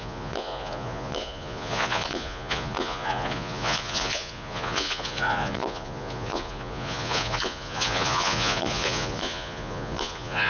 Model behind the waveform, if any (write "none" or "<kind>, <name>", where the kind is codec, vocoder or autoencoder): vocoder, Vocos